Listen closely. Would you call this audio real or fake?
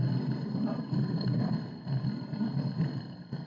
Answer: fake